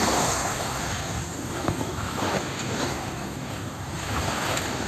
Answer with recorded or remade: remade